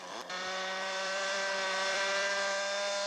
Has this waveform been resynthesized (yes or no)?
yes